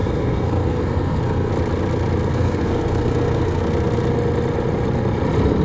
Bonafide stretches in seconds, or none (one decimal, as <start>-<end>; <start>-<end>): 1.5-2.3; 3.6-5.6